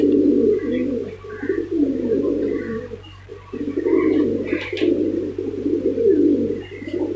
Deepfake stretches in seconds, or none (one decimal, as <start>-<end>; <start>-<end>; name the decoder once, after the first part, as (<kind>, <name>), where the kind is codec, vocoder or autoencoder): none